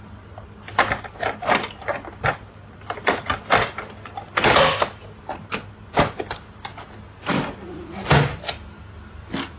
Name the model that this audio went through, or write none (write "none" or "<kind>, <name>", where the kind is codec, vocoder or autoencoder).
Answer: none